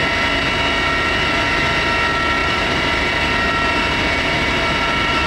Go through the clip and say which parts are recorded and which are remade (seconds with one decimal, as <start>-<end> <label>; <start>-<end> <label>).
0.0-2.4 recorded; 2.4-5.3 remade